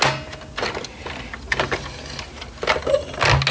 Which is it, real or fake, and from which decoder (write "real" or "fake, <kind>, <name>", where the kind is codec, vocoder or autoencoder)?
real